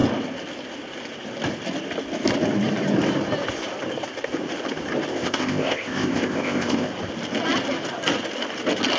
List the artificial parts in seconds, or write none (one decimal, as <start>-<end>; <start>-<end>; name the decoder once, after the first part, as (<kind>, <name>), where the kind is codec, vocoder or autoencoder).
5.1-6.9 (codec, ZipCodec)